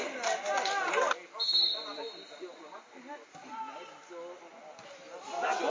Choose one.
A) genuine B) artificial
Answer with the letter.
A